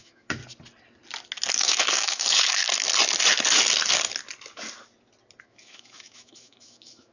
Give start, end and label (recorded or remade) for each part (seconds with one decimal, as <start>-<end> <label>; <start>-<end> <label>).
0.0-0.4 remade; 0.4-1.5 recorded; 1.5-2.6 remade; 2.6-5.4 recorded; 5.4-7.1 remade